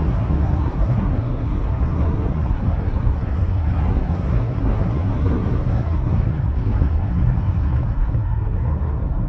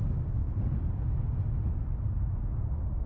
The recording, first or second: second